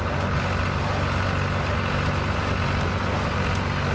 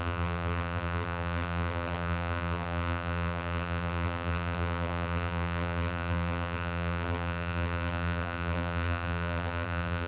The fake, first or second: second